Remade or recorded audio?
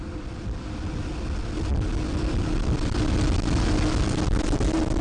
recorded